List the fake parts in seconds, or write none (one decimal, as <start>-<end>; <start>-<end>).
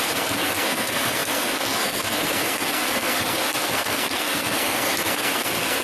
0.0-5.8